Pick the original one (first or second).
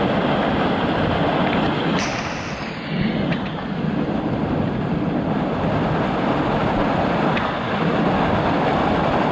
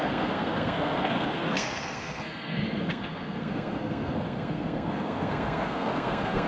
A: first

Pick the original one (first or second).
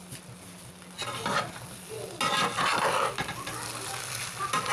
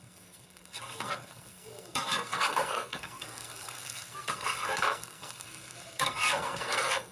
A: first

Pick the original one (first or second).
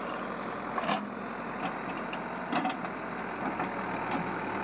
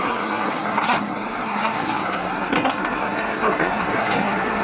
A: first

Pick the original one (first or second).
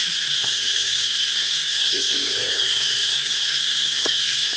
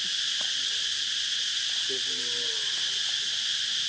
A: second